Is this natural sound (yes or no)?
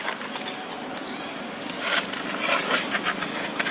yes